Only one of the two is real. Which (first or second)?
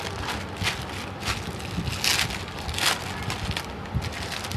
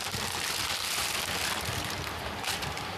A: first